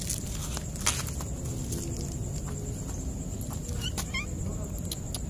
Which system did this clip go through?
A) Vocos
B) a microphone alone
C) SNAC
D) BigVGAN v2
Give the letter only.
B